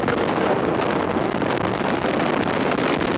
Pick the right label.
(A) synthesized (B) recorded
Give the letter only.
B